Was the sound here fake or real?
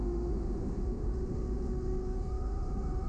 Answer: fake